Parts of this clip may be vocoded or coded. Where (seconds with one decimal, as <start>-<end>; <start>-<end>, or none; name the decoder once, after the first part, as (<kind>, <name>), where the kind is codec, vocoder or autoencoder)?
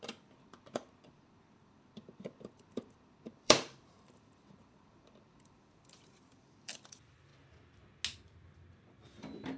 0.0-7.3 (vocoder, BigVGAN v2); 8.7-9.6